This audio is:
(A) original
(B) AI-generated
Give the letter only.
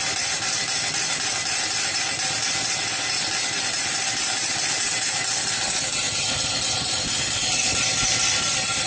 A